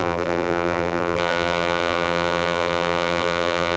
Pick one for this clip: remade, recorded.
remade